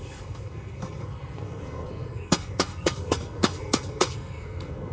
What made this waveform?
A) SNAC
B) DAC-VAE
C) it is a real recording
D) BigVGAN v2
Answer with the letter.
A